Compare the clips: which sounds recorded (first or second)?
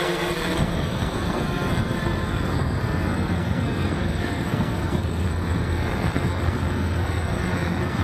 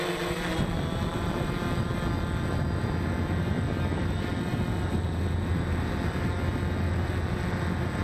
second